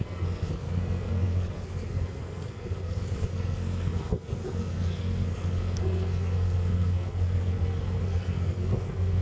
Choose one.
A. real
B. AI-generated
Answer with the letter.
B